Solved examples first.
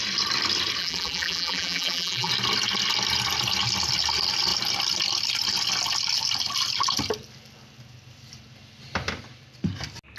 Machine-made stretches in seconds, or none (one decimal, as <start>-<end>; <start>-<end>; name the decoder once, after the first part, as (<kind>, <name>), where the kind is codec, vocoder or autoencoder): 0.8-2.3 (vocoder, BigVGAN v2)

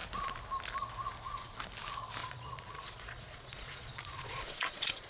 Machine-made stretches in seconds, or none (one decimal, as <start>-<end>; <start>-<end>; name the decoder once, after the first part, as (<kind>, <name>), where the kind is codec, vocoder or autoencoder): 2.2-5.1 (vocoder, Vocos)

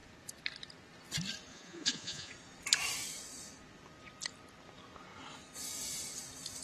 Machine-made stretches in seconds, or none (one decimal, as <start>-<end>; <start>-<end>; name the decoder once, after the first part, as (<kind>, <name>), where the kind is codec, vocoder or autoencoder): 1.5-2.3 (vocoder, Vocos)

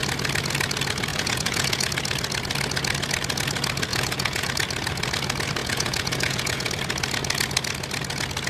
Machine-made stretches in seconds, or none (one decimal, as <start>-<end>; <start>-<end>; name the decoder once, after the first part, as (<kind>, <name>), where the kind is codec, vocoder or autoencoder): 1.1-1.9 (vocoder, Vocos); 3.9-4.5; 5.6-6.7

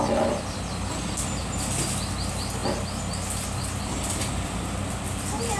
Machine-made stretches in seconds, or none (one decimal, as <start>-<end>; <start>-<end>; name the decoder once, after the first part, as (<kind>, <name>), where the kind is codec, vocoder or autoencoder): none

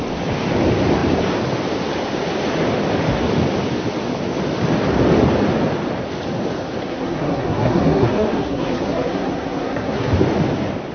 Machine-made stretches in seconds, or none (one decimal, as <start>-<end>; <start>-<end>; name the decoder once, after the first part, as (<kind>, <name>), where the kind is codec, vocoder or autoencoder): 6.8-10.1 (codec, SNAC)